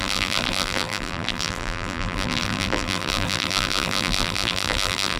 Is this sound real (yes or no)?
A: no